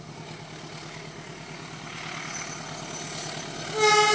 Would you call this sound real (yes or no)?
yes